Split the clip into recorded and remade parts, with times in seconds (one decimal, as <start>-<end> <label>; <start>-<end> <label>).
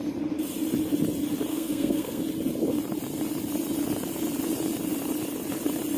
0.0-1.5 recorded; 1.5-2.2 remade; 2.2-6.0 recorded